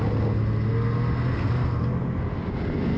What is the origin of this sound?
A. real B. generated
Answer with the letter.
A